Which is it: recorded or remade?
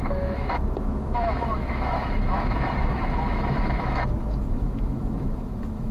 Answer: remade